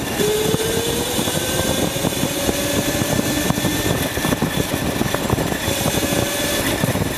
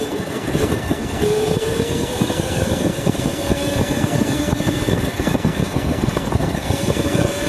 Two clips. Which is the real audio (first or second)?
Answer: first